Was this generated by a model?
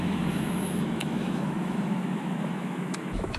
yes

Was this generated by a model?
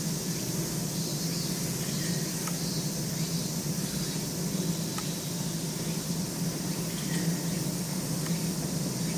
no